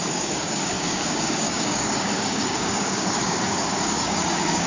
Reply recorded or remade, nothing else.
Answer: remade